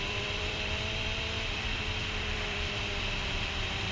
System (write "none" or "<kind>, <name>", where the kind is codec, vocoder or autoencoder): vocoder, BigVGAN v2